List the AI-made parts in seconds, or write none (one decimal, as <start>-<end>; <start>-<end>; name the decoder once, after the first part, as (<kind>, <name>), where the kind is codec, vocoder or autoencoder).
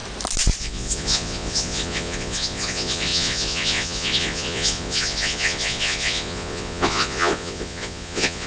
0.6-8.5 (vocoder, Vocos)